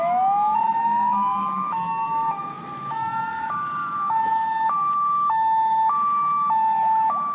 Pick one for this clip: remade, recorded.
remade